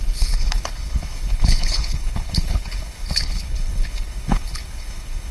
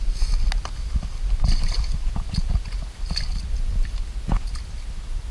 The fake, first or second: first